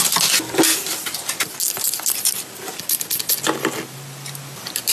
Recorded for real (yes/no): yes